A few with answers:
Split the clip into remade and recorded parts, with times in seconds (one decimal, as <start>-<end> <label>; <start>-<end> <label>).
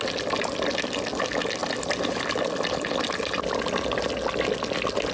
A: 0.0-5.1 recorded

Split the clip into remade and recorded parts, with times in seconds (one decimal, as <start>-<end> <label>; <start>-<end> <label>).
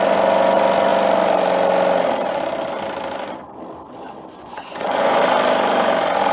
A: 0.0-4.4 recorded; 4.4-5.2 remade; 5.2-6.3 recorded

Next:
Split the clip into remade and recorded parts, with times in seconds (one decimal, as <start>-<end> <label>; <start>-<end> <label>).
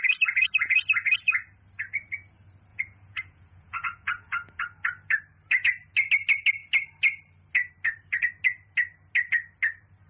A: 0.0-2.7 recorded; 2.7-4.6 remade; 4.6-10.1 recorded